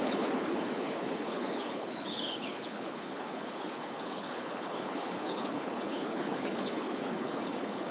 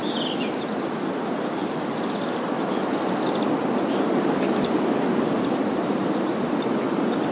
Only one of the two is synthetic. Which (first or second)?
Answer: first